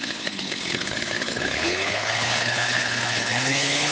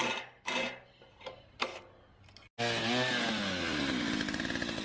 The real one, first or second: second